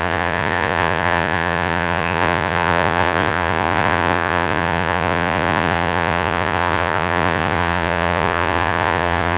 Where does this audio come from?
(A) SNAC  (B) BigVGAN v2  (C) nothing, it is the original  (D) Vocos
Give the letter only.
D